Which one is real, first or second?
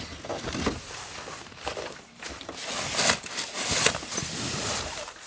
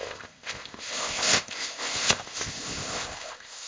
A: first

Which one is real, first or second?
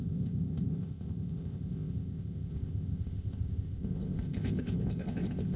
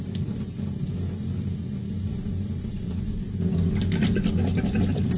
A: second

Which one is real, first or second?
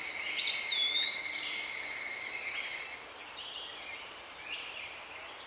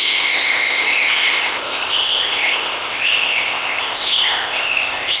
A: first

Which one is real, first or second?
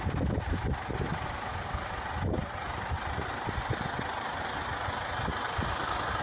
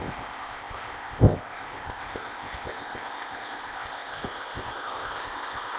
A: first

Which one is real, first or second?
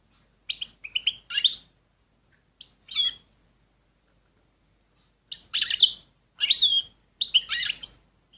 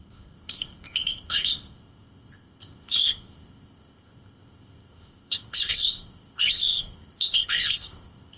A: first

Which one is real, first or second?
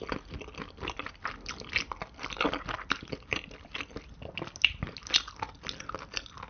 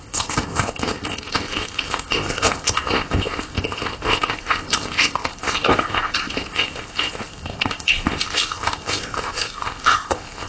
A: first